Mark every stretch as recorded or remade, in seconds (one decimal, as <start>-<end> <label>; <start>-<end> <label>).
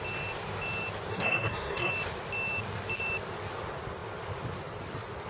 0.0-1.1 recorded; 1.1-1.9 remade; 1.9-5.3 recorded